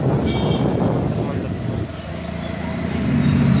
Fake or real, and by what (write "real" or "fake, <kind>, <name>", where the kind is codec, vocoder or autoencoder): real